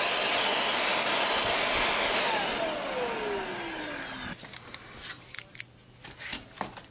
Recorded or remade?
recorded